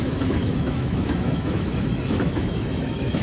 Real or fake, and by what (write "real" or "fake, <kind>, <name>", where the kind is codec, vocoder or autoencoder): fake, autoencoder, DAC-VAE